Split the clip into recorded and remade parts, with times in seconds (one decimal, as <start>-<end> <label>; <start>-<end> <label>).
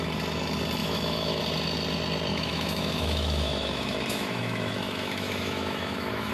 0.0-0.8 recorded; 0.8-1.4 remade; 1.4-2.3 recorded; 2.3-6.3 remade